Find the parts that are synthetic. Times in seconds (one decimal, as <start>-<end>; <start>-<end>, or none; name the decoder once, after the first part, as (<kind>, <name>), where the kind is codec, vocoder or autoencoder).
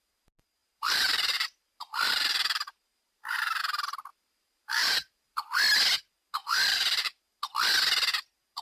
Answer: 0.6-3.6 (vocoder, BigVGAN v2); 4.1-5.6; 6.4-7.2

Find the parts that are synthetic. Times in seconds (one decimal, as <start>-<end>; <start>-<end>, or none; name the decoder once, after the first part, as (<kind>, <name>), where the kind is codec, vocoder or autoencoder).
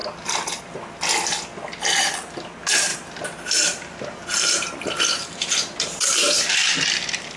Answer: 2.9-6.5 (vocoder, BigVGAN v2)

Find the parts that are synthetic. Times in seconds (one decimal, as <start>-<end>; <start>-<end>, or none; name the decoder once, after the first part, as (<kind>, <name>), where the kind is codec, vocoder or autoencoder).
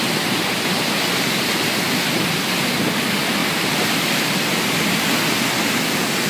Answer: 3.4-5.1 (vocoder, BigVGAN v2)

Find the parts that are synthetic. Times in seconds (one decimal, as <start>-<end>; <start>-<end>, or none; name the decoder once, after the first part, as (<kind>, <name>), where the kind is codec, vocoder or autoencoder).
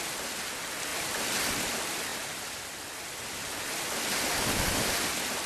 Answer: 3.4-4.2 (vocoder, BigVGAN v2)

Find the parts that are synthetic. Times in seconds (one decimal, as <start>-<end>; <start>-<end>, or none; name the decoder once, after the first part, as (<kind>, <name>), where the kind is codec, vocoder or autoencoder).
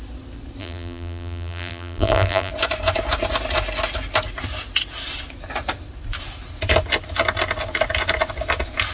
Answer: 0.6-2.5 (vocoder, BigVGAN v2)